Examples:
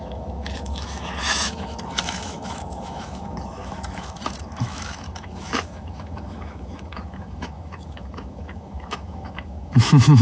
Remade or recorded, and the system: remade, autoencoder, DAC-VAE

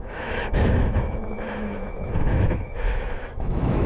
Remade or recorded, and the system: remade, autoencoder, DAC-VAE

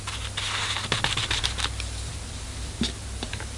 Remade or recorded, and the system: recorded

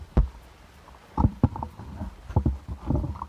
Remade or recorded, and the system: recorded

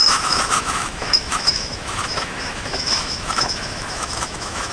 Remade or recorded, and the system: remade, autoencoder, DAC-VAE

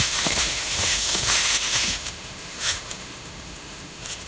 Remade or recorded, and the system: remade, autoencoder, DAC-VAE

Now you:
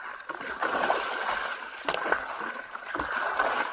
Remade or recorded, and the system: recorded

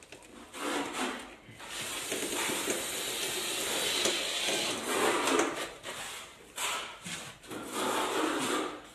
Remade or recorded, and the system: recorded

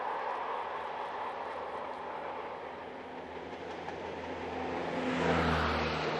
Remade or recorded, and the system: recorded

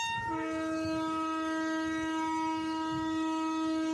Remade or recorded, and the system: remade, autoencoder, DAC-VAE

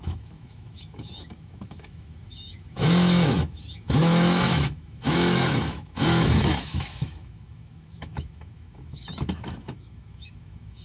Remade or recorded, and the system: remade, autoencoder, DAC-VAE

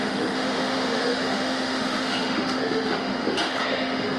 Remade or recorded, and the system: remade, autoencoder, DAC-VAE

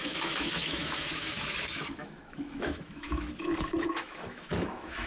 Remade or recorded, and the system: remade, autoencoder, DAC-VAE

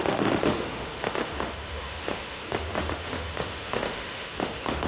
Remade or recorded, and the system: remade, autoencoder, DAC-VAE